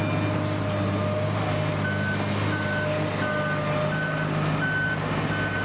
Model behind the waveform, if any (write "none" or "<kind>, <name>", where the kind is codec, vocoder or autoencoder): none